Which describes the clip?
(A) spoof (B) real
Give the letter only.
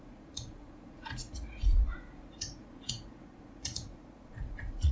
A